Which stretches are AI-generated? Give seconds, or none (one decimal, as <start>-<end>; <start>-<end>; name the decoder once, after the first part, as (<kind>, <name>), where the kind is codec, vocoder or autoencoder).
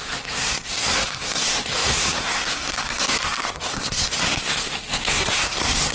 0.0-5.9 (codec, SNAC)